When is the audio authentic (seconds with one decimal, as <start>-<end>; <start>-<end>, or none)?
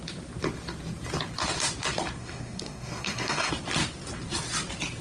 0.0-2.2; 3.5-5.0